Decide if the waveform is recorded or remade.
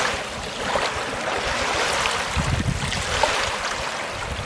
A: recorded